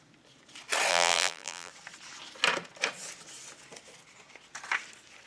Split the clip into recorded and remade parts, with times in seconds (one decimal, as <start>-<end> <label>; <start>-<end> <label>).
0.0-0.9 recorded; 0.9-1.7 remade; 1.7-5.3 recorded